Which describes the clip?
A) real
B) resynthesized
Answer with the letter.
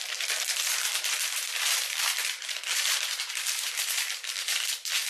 B